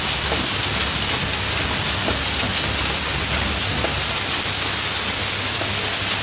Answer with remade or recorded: recorded